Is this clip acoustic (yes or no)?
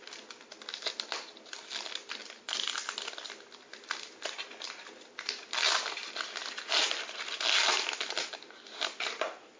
yes